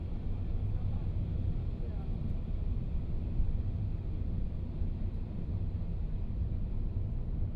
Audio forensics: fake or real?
real